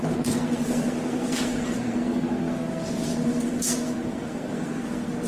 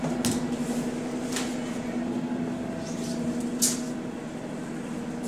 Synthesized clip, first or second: first